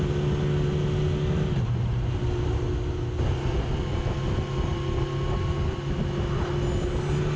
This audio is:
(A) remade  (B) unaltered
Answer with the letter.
B